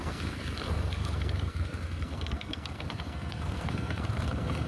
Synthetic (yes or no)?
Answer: yes